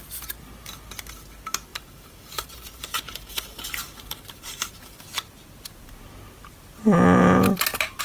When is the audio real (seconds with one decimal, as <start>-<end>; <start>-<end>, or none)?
0.0-1.7; 5.0-8.0